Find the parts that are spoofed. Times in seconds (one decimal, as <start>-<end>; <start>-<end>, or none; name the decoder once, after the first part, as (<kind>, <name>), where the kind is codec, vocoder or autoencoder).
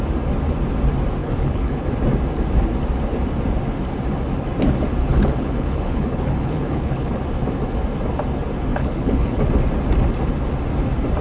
1.2-1.9 (codec, HILCodec); 5.0-7.1; 8.7-9.4